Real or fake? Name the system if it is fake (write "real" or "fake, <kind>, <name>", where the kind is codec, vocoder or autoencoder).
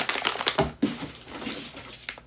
real